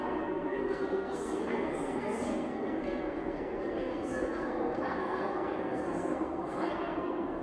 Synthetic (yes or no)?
yes